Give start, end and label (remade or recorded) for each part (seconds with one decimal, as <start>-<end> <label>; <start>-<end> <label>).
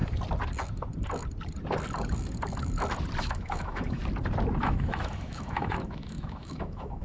0.0-3.2 recorded; 3.2-4.0 remade; 4.0-4.6 recorded; 4.6-7.0 remade